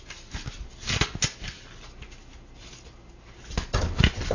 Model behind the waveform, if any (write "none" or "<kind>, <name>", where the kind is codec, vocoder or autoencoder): none